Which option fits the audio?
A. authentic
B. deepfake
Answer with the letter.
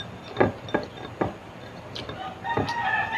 A